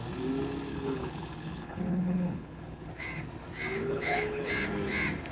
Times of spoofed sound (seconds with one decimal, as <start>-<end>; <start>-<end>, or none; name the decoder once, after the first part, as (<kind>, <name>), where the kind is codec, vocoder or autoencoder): 0.7-2.9 (codec, HILCodec); 3.8-4.5